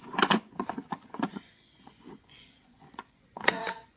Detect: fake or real fake